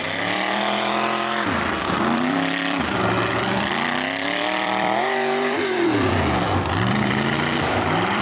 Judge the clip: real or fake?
fake